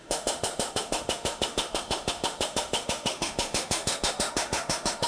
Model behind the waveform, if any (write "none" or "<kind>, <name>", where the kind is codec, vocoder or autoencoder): autoencoder, DAC-VAE